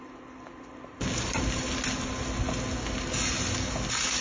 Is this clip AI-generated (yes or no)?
no